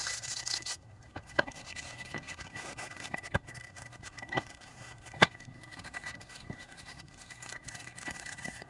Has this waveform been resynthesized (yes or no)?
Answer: yes